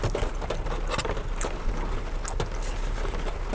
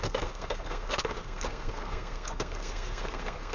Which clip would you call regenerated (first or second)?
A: second